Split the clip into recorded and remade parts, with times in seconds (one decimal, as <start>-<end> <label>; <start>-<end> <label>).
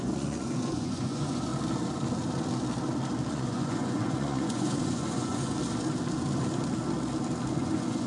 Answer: 0.0-1.5 remade; 1.5-3.3 recorded; 3.3-5.6 remade; 5.6-7.6 recorded; 7.6-8.1 remade